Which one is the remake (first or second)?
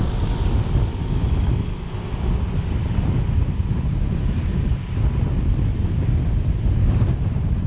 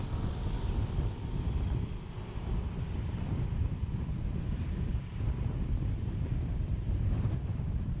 second